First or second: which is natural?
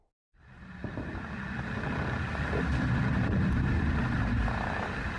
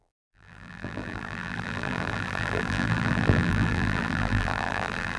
first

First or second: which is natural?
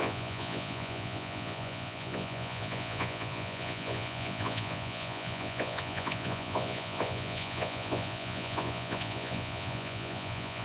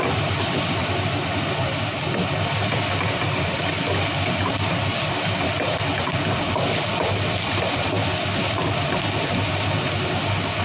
second